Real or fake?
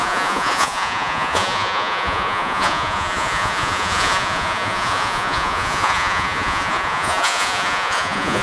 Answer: fake